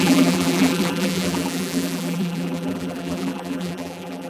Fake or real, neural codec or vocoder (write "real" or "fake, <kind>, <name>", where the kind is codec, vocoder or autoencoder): fake, vocoder, BigVGAN v2